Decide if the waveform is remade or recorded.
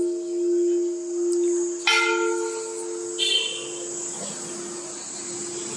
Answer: recorded